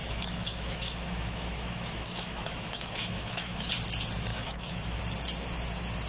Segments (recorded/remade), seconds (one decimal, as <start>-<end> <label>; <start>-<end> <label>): 0.0-3.7 remade; 3.7-4.3 recorded; 4.3-5.0 remade; 5.0-6.1 recorded